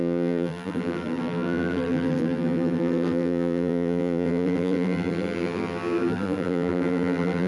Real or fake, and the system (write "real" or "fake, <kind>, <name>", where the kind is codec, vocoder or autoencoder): fake, vocoder, BigVGAN v2